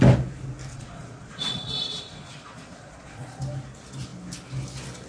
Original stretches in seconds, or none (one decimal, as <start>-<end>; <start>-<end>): 0.0-0.7; 3.4-5.1